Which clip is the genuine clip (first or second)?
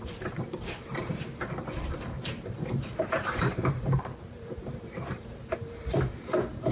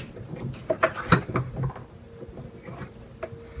second